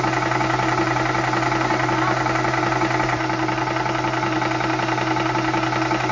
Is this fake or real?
real